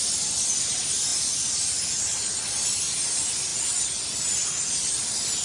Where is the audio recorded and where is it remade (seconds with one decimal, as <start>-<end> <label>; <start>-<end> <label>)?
0.0-5.4 recorded